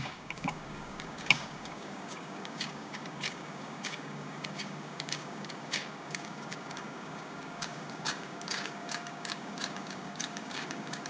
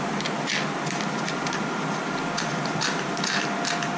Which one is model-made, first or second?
first